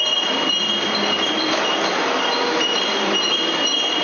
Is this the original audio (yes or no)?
yes